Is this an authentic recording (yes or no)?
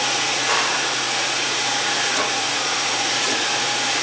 no